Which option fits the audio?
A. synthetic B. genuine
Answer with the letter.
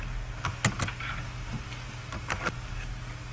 B